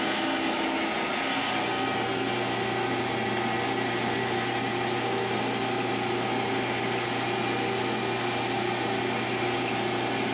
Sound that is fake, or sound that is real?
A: real